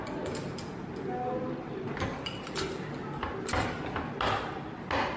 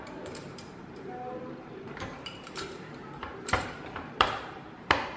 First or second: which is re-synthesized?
second